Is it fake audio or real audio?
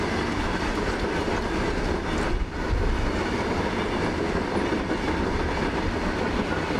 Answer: real